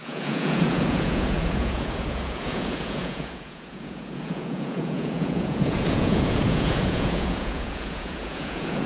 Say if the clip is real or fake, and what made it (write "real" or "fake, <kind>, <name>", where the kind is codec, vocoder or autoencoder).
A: fake, vocoder, Vocos